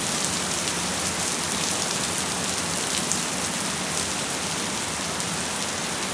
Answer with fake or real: real